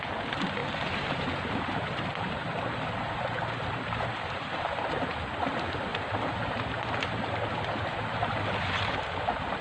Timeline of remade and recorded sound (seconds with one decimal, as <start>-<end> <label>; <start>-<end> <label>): 0.0-0.6 recorded; 0.6-4.9 remade; 4.9-5.9 recorded; 5.9-6.6 remade; 6.6-7.9 recorded; 7.9-8.8 remade; 8.8-9.6 recorded